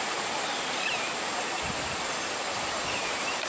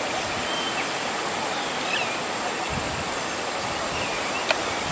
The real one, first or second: second